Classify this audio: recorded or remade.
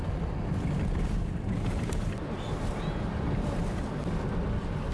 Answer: recorded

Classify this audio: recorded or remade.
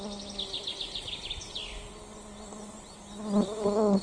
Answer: recorded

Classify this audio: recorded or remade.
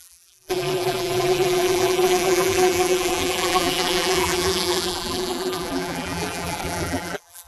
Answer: remade